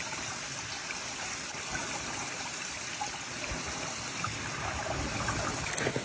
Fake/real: real